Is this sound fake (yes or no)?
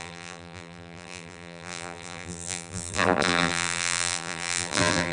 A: yes